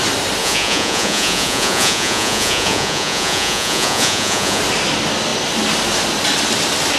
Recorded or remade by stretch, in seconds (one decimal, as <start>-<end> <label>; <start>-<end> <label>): 0.0-0.4 recorded; 0.4-4.6 remade; 4.6-7.0 recorded